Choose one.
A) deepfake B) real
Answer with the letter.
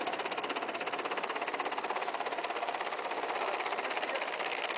A